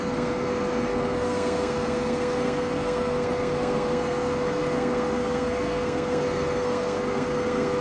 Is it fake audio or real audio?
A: fake